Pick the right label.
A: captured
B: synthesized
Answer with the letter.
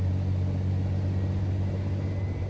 A